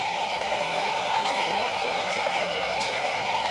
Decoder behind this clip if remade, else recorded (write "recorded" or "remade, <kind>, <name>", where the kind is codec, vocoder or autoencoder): remade, codec, SNAC